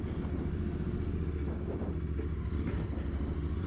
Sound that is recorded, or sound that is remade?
recorded